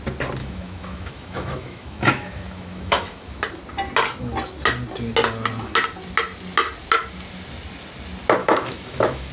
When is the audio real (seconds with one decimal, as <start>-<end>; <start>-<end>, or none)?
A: 0.0-0.4; 3.4-8.4